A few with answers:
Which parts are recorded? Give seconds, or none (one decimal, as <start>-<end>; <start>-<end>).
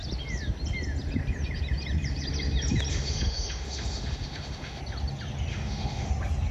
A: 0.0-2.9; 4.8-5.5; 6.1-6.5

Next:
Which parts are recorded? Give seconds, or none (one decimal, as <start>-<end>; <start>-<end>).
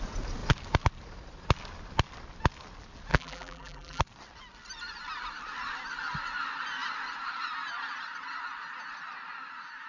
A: 0.0-3.1; 4.0-9.9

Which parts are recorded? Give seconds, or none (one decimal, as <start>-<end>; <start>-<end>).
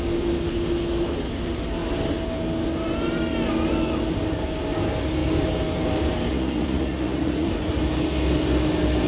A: 0.0-6.3; 7.5-9.1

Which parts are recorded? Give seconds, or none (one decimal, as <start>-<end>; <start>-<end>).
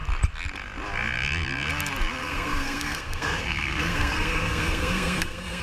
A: 0.0-2.2